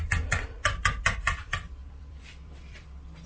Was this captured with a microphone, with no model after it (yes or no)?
no